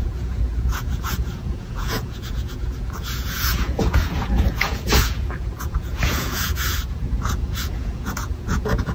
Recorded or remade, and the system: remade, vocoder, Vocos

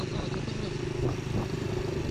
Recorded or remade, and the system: recorded